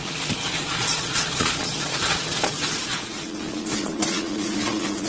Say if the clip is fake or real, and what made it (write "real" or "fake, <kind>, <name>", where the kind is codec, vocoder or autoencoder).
fake, vocoder, Vocos